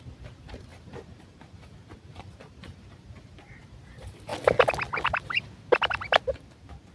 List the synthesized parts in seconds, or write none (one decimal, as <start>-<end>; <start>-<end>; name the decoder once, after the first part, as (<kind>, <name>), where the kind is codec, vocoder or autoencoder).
0.0-4.3 (vocoder, BigVGAN v2); 4.9-6.9